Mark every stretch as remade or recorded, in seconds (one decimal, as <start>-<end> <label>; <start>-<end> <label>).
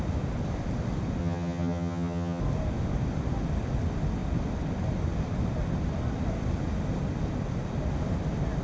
0.0-1.2 recorded; 1.2-2.4 remade; 2.4-8.6 recorded